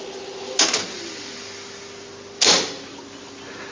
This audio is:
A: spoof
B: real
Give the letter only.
B